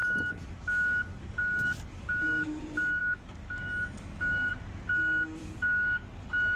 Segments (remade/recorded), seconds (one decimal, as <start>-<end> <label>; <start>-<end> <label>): 0.0-2.6 remade; 2.6-3.0 recorded; 3.0-4.5 remade; 4.5-5.4 recorded; 5.4-6.6 remade